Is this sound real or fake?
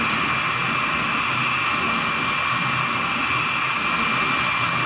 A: real